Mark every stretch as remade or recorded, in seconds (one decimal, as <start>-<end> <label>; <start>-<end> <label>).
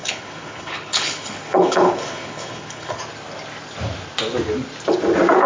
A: 0.0-3.0 remade; 3.0-5.5 recorded